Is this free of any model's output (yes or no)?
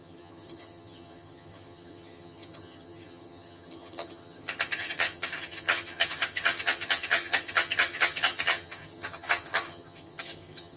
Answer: no